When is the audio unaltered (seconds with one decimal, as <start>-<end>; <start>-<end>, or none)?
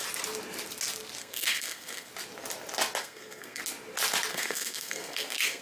0.0-1.2; 2.1-3.0; 3.6-4.3